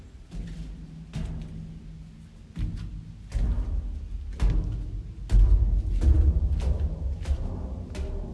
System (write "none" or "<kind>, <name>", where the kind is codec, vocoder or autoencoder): none